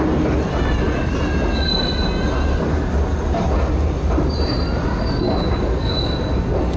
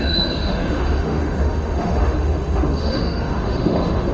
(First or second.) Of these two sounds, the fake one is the second